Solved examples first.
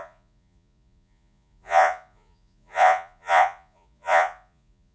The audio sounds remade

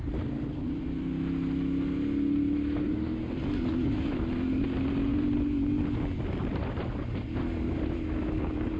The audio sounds recorded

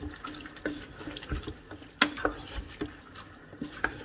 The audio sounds recorded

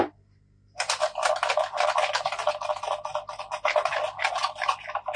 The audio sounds recorded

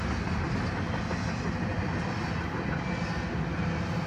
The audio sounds recorded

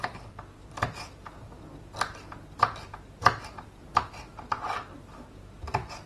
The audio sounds recorded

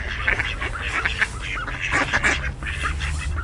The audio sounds recorded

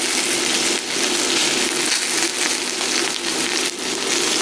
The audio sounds recorded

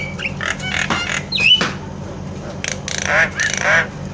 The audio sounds recorded